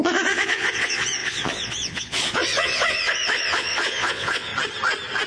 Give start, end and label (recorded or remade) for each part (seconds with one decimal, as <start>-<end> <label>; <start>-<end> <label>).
0.0-4.5 remade; 4.5-5.3 recorded